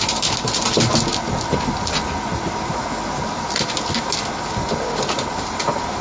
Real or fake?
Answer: real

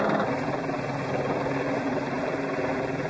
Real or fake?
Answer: real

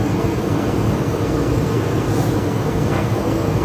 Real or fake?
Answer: fake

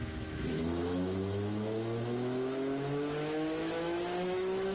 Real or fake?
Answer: fake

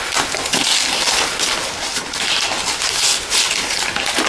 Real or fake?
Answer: real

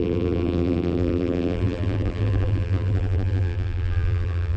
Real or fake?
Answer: fake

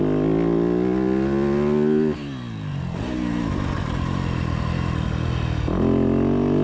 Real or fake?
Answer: real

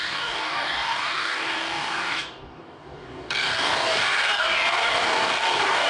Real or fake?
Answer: fake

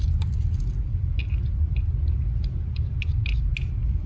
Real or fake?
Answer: real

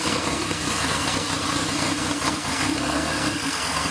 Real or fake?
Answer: fake